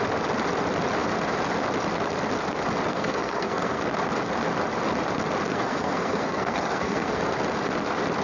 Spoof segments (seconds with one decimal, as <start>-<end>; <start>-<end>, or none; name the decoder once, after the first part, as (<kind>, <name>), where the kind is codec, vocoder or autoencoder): 2.9-3.8 (codec, SNAC); 5.5-7.2